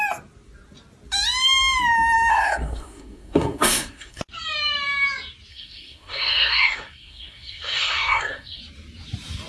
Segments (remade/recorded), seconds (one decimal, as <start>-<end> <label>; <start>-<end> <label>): 0.0-2.3 recorded; 2.3-4.2 remade; 4.2-5.5 recorded; 5.5-8.6 remade; 8.6-9.5 recorded